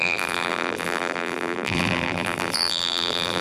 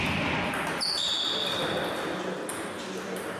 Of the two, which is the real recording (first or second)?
second